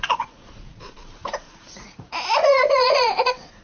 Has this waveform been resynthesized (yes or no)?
yes